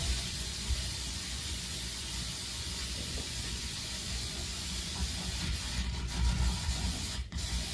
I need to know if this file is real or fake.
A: fake